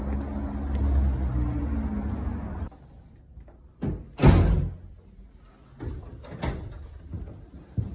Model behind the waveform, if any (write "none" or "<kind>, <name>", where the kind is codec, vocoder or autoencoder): none